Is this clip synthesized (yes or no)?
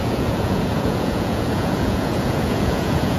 yes